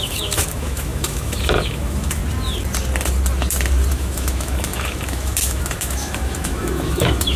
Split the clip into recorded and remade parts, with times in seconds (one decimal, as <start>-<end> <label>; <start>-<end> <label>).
0.0-2.2 remade; 2.2-3.9 recorded; 3.9-7.4 remade